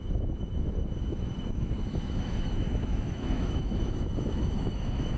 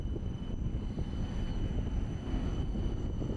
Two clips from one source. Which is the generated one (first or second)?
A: first